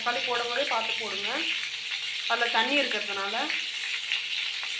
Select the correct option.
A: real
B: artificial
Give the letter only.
A